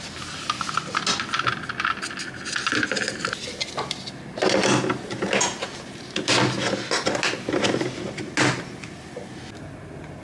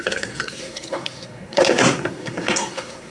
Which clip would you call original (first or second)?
first